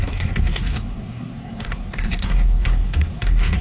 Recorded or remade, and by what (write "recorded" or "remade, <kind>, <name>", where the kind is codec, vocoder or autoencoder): remade, codec, SNAC